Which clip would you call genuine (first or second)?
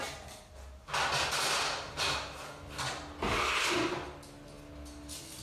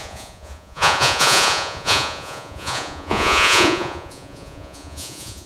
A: first